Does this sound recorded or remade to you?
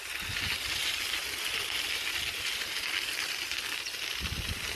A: recorded